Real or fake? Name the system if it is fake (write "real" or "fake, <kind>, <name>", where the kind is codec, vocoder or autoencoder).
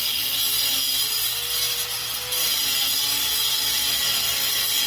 real